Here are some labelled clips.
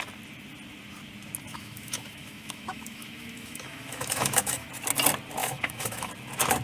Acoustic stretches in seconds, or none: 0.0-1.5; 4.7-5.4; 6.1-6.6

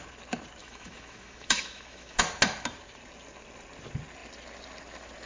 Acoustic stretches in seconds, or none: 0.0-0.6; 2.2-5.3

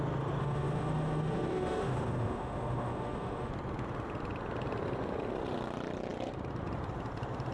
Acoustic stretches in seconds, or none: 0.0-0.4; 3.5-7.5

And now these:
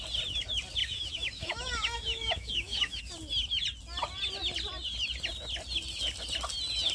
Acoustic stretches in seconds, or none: 0.0-0.8; 3.0-6.9

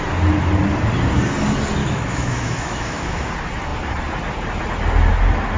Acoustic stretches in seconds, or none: 0.0-1.8; 3.3-5.6

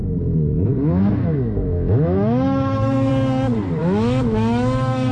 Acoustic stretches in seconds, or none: 3.1-3.8

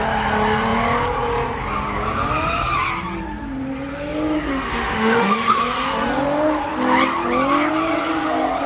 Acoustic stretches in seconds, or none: 0.0-4.5; 5.6-8.7